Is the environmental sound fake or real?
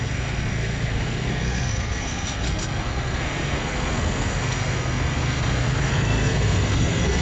fake